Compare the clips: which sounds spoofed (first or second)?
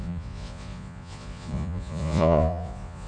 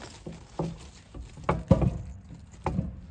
first